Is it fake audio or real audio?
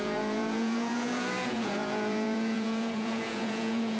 fake